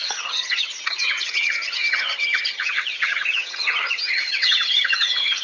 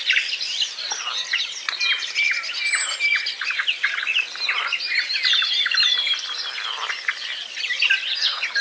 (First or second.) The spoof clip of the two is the first